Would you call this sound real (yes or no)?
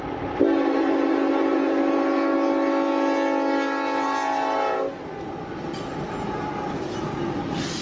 yes